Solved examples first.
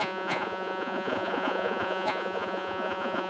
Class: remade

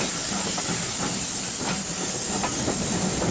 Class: recorded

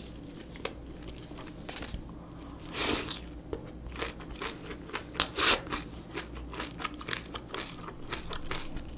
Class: recorded